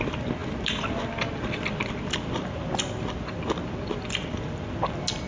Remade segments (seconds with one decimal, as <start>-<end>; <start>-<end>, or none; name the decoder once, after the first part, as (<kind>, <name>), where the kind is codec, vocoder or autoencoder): none